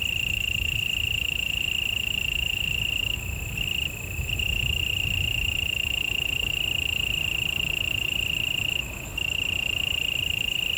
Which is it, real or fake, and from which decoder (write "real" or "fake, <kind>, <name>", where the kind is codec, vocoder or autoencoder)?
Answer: real